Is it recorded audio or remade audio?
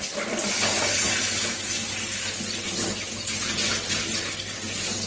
recorded